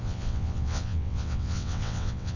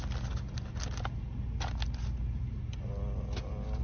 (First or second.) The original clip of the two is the second